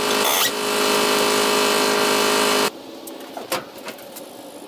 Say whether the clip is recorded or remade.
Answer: recorded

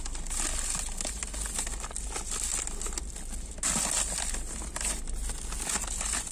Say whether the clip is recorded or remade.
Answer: recorded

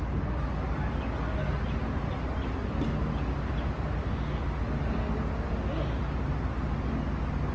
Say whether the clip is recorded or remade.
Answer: recorded